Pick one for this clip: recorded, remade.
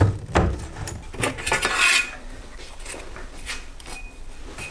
recorded